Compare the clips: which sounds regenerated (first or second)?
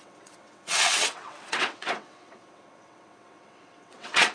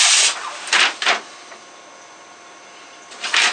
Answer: first